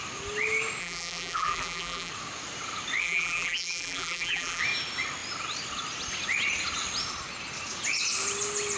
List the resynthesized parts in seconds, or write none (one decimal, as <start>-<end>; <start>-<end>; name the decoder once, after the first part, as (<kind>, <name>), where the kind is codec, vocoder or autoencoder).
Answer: 0.8-2.1 (vocoder, BigVGAN v2); 3.0-4.6